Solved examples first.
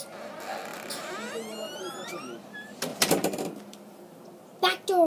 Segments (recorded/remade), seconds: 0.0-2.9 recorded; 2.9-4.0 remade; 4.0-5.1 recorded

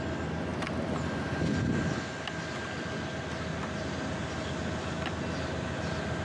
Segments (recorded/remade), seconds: 0.0-3.1 recorded; 3.1-3.9 remade; 3.9-6.2 recorded

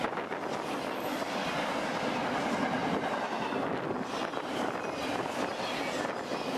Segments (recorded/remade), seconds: 0.0-6.6 recorded

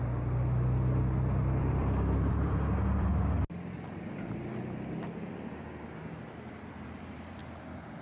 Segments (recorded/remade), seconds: 0.0-3.1 remade; 3.1-4.0 recorded; 4.0-7.4 remade; 7.4-8.0 recorded

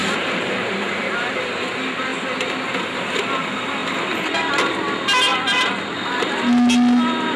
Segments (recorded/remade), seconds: 0.0-1.5 remade; 1.5-7.4 recorded

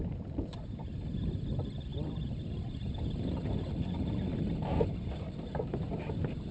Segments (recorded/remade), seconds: 0.0-6.5 recorded

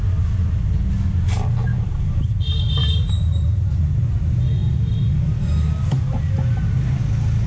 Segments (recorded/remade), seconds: 0.0-1.7 recorded; 1.7-2.3 remade; 2.3-2.8 recorded; 2.8-4.1 remade; 4.1-7.5 recorded

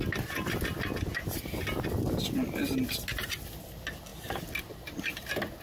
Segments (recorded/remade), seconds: 0.0-5.6 recorded